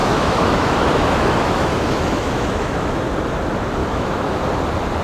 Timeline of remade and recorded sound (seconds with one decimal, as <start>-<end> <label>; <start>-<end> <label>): 0.0-3.0 remade; 3.0-3.8 recorded; 3.8-4.4 remade; 4.4-5.0 recorded